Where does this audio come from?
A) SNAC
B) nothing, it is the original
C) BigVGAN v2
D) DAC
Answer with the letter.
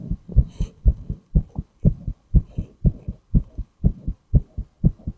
C